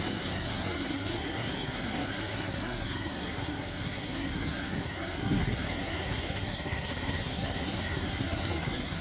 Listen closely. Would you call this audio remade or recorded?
remade